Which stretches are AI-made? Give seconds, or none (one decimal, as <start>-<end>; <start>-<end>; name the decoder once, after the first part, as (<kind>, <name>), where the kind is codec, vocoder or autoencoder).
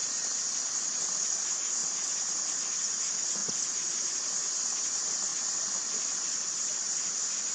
none